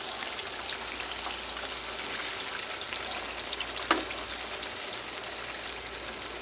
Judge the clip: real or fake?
real